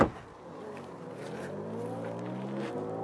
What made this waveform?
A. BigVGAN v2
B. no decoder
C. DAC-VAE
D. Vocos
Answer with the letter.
B